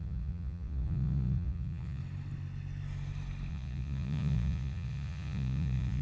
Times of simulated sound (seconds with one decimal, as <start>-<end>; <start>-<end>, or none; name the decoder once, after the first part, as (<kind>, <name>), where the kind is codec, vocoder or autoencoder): 0.0-2.0 (vocoder, Vocos); 3.5-6.0